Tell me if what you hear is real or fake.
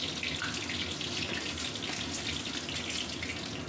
real